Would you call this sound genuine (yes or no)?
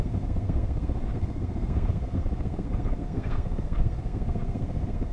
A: no